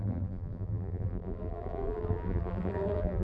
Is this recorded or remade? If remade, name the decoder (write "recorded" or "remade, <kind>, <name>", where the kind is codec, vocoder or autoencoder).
remade, vocoder, BigVGAN v2